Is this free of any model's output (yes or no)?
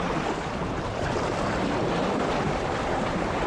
yes